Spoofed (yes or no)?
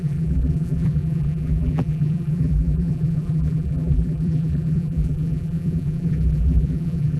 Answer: yes